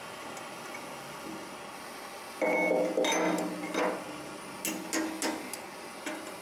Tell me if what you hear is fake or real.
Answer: real